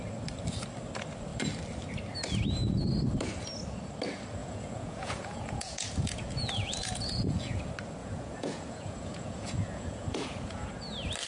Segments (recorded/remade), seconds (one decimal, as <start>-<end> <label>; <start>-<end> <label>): 0.0-4.4 recorded; 4.4-7.6 remade; 7.6-8.0 recorded; 8.0-10.7 remade; 10.7-11.3 recorded